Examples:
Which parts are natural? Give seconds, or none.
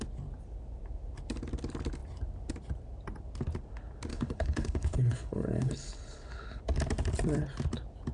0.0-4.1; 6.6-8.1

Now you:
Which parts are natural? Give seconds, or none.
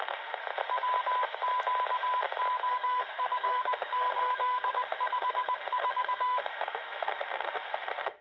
0.4-2.7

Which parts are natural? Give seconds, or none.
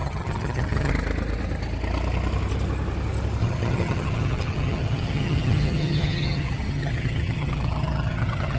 0.9-3.4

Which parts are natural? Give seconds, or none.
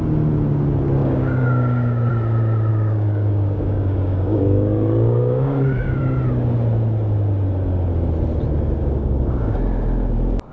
0.0-1.0; 2.1-2.7; 6.0-8.8; 9.5-10.5